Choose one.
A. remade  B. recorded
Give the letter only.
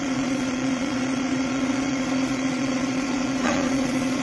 A